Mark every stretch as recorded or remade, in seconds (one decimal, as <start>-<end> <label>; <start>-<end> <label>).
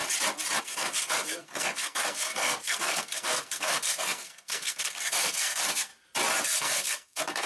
0.0-0.6 recorded; 0.6-5.9 remade; 5.9-6.4 recorded; 6.4-7.5 remade